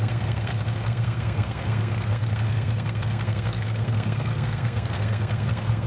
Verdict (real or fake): fake